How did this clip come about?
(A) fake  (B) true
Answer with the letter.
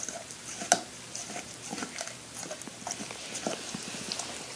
B